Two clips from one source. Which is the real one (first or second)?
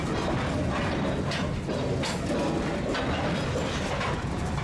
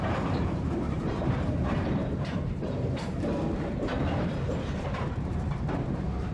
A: first